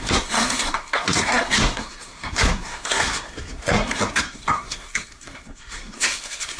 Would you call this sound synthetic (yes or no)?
yes